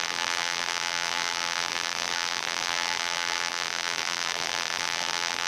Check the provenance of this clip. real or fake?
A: fake